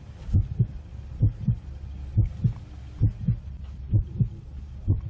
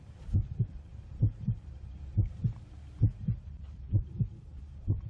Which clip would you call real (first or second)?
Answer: first